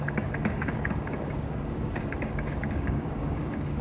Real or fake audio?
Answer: fake